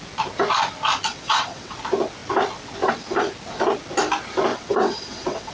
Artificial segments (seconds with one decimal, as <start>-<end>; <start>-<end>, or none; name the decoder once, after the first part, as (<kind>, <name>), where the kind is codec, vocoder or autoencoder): 1.1-1.7 (vocoder, WaveNeXt); 4.5-5.5